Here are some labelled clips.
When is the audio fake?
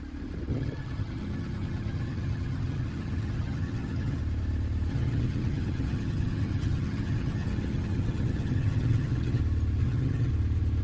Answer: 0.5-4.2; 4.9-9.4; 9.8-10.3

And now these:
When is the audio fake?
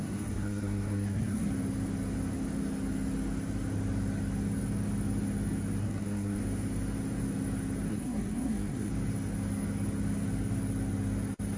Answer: 0.0-1.5; 5.8-6.4; 7.9-8.9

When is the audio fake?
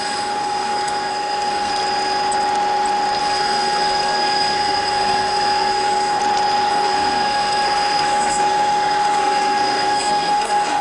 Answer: 0.0-1.7; 3.2-6.2; 6.7-10.8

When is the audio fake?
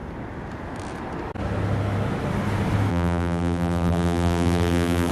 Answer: 2.9-5.1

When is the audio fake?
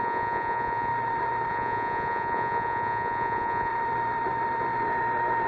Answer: 0.0-0.9; 1.5-3.7